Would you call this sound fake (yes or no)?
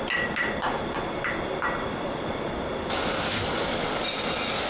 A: no